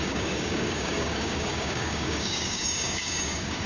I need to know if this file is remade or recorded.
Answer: remade